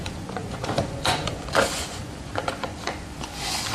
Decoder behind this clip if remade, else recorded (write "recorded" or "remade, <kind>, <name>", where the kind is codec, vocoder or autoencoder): remade, vocoder, Vocos